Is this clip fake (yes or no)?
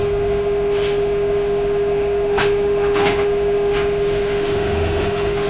yes